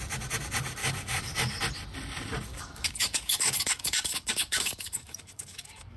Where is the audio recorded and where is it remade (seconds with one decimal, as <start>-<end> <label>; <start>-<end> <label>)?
0.0-0.8 recorded; 0.8-1.6 remade; 1.6-2.5 recorded; 2.5-6.0 remade